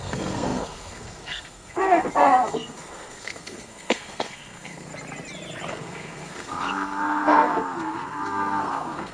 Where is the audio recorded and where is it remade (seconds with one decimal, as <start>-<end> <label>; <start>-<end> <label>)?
0.0-4.9 remade; 4.9-5.7 recorded; 5.7-9.1 remade